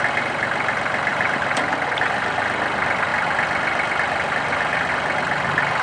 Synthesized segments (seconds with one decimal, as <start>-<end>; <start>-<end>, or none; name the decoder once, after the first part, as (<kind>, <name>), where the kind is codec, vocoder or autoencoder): 1.1-1.8 (vocoder, BigVGAN v2)